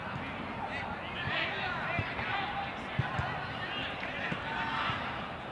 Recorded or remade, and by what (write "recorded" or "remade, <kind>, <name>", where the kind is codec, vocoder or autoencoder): recorded